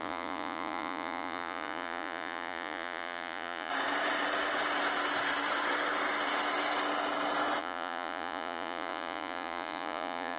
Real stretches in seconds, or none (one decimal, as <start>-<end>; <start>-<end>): 3.7-7.6